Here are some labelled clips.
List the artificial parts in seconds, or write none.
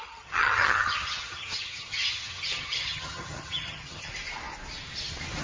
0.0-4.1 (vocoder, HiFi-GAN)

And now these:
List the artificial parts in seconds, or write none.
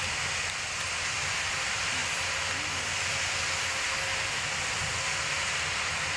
none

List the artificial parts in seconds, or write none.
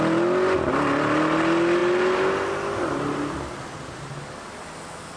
none